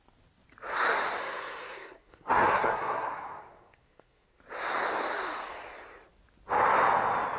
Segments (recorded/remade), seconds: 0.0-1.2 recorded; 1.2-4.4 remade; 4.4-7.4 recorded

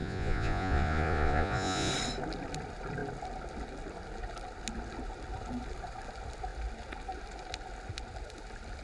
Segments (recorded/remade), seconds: 0.0-1.9 remade; 1.9-8.8 recorded

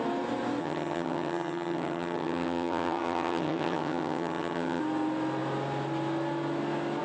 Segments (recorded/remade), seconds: 0.0-0.6 recorded; 0.6-4.8 remade; 4.8-7.0 recorded